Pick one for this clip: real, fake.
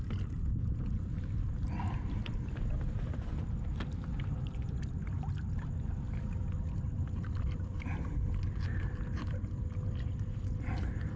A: real